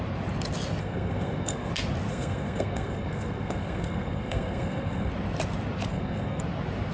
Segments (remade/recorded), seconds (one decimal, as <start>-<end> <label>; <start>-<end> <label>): 0.0-0.8 recorded; 0.8-1.7 remade; 1.7-2.1 recorded; 2.1-5.1 remade; 5.1-5.9 recorded; 5.9-6.4 remade; 6.4-6.9 recorded